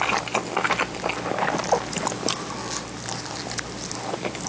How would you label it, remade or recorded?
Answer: recorded